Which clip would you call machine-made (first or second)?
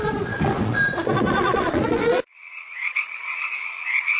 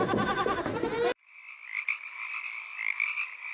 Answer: first